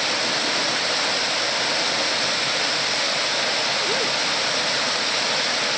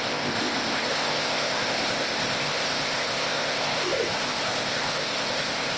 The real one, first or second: first